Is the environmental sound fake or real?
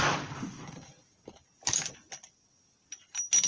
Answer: real